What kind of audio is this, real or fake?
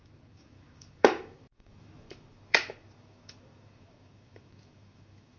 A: fake